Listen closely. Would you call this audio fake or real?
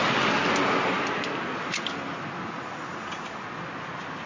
real